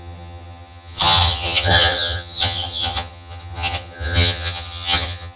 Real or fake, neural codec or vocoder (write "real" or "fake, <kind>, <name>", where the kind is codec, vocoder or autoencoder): fake, vocoder, HiFi-GAN